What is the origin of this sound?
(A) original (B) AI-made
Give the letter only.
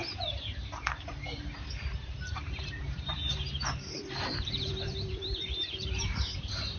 B